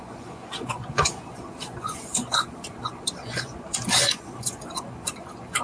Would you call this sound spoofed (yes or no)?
yes